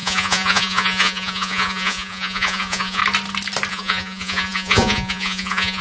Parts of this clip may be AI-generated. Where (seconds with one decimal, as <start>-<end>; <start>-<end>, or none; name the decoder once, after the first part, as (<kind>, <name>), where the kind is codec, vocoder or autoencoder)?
0.0-3.0 (vocoder, Vocos); 3.7-5.8